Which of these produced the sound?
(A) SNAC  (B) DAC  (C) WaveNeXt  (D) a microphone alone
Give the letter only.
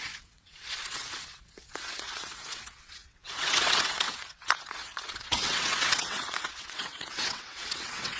C